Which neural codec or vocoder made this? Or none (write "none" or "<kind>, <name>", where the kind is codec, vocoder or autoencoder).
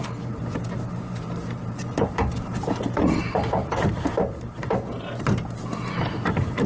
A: vocoder, BigVGAN v2